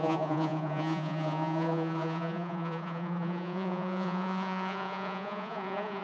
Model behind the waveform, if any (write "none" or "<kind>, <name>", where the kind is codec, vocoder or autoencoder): vocoder, Vocos